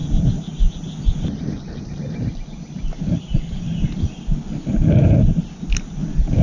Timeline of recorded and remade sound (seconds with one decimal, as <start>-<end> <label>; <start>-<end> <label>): 0.0-6.4 recorded